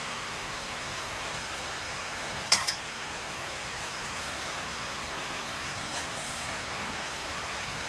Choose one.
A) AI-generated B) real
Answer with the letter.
A